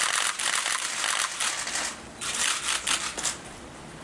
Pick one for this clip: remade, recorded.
recorded